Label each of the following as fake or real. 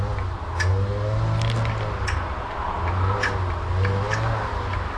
real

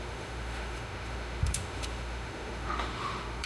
fake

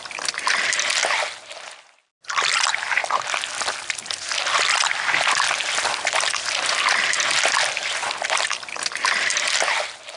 real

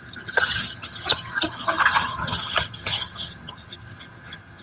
fake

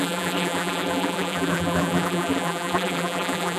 fake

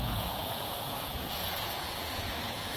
fake